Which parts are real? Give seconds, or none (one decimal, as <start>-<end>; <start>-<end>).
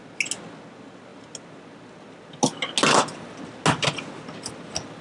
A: 0.0-5.0